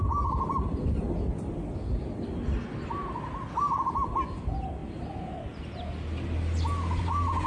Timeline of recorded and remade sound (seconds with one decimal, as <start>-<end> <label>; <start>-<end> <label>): 0.0-7.5 recorded